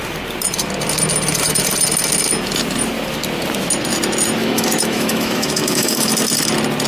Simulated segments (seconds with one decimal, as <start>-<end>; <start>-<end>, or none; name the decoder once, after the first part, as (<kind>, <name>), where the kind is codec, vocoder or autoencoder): 4.4-6.1 (autoencoder, DAC-VAE)